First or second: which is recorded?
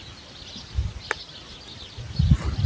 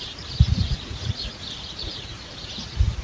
first